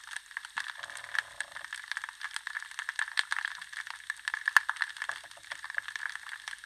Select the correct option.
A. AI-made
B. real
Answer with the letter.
B